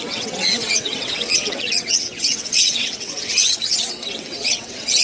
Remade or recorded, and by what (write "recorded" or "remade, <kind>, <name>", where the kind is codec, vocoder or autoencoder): remade, vocoder, WaveNeXt